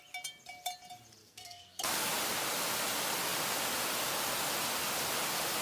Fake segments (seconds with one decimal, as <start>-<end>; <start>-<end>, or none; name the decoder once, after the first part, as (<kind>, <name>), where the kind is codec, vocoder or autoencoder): 1.2-2.1 (codec, SNAC)